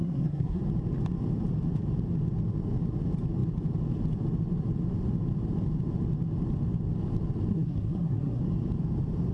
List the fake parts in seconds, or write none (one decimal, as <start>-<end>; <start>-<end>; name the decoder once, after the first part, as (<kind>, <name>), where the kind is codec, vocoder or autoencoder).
0.0-0.6 (codec, SNAC); 7.5-8.4

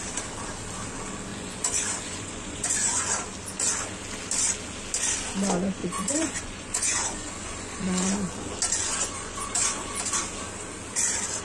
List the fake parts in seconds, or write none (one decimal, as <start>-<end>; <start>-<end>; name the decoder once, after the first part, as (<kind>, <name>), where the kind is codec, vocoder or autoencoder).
1.3-3.1 (vocoder, Vocos); 5.8-8.1; 8.8-9.9